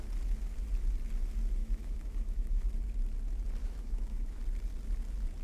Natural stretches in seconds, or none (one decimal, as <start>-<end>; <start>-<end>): 0.0-1.6; 2.6-3.6; 4.4-5.4